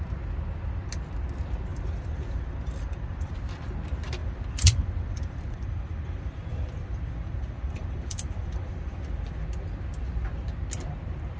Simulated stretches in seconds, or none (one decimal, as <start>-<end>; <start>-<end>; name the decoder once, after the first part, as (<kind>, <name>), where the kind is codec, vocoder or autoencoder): 1.7-3.3 (vocoder, BigVGAN v2); 4.2-9.4